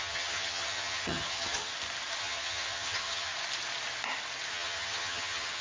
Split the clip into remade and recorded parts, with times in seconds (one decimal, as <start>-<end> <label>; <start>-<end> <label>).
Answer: 0.0-1.7 remade; 1.7-2.2 recorded; 2.2-3.3 remade; 3.3-4.5 recorded; 4.5-5.6 remade